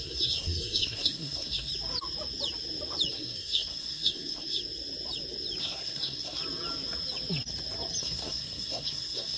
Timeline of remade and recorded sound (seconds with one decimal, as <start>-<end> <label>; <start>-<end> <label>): 0.0-1.7 remade; 1.7-3.1 recorded; 3.1-4.6 remade; 4.6-5.6 recorded; 5.6-6.4 remade; 6.4-8.0 recorded; 8.0-9.4 remade